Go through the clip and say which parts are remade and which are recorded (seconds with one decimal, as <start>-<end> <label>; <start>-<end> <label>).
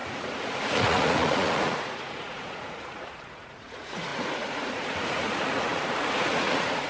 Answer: 0.0-6.9 remade